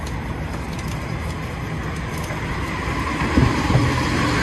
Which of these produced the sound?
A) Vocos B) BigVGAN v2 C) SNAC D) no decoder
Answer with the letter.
D